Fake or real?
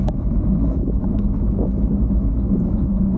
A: fake